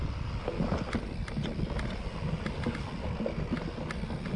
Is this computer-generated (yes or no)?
no